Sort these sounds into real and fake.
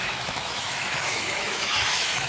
fake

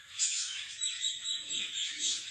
fake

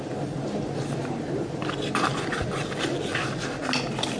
real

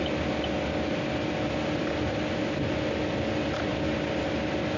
real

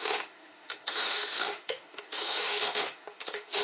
fake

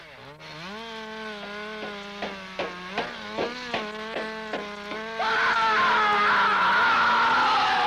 real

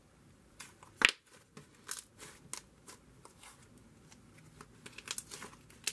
real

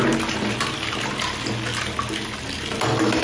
real